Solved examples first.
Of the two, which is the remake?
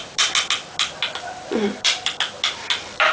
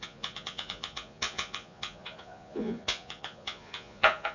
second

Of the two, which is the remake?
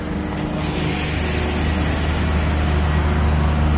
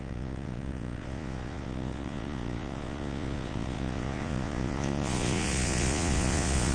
second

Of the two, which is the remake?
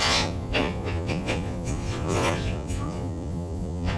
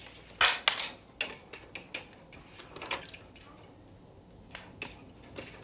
first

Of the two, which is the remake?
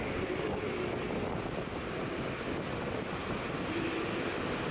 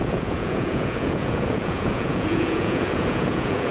second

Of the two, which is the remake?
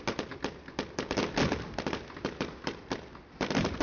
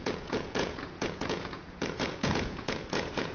second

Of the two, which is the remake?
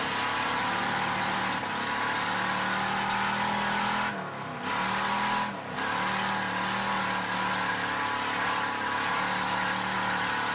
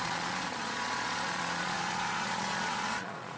second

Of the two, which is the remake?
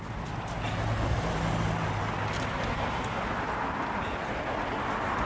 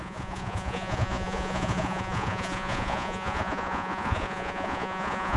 second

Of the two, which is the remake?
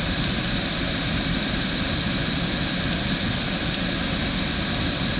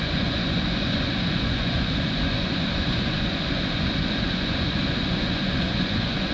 second